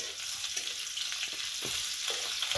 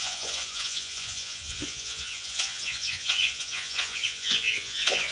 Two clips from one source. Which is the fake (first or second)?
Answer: second